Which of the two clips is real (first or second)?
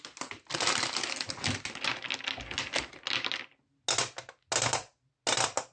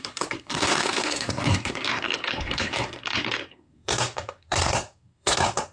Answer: first